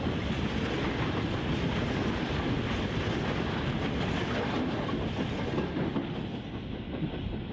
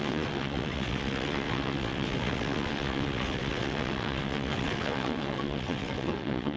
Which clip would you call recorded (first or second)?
first